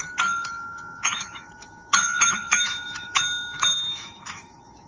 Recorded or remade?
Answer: remade